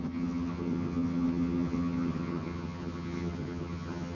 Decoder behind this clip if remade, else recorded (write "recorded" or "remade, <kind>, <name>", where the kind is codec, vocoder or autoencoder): remade, vocoder, HiFi-GAN